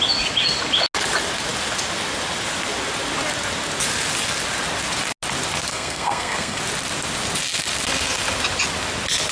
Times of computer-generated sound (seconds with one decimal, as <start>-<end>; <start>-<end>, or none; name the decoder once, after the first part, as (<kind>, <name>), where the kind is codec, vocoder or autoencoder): 5.7-6.6 (codec, SNAC)